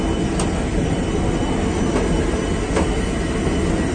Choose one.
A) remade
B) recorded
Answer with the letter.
B